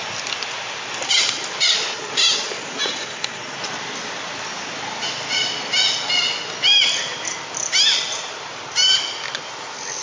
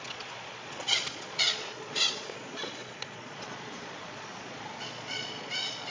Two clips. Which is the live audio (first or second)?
first